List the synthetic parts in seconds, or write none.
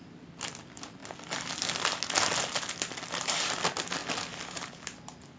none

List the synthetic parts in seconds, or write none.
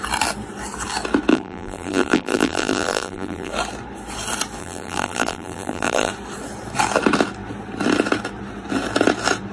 1.3-3.5 (vocoder, BigVGAN v2); 4.6-6.1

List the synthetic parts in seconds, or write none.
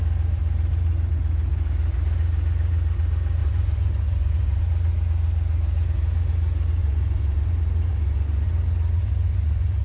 3.4-4.6 (vocoder, Vocos); 6.8-7.5; 7.9-8.5; 9.0-9.8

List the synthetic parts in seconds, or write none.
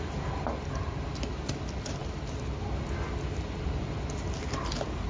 none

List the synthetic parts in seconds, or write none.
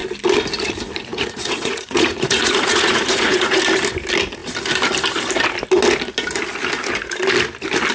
1.1-3.6 (vocoder, Vocos)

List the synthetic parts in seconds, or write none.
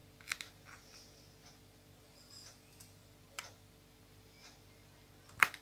none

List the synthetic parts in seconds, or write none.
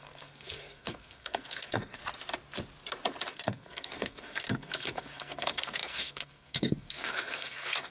0.0-2.0 (codec, SNAC); 3.3-7.9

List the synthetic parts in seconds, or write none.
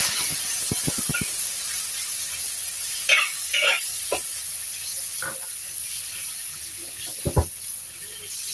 3.1-4.0 (codec, DAC); 6.5-7.2